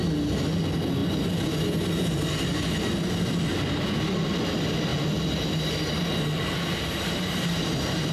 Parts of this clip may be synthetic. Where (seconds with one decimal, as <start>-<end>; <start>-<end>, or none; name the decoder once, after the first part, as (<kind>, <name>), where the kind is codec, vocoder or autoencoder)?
none